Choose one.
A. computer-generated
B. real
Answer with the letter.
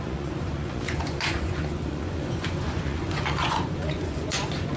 A